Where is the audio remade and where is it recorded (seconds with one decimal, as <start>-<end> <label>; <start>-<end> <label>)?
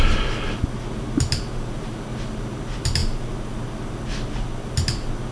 0.0-5.3 recorded